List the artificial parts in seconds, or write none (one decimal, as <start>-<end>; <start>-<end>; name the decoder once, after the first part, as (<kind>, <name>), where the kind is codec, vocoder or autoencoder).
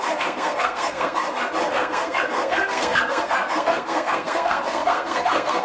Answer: 0.0-1.2 (codec, SNAC); 1.7-5.6